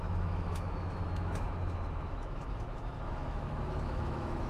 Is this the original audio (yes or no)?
no